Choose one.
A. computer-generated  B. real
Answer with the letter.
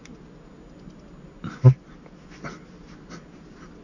B